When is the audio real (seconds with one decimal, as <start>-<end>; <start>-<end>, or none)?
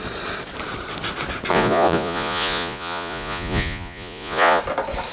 0.0-1.5; 4.6-5.1